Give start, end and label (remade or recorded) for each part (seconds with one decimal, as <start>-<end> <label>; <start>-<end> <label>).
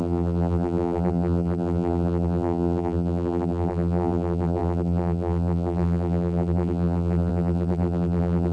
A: 0.0-8.5 remade